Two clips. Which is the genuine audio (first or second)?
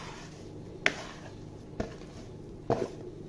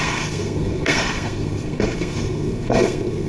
first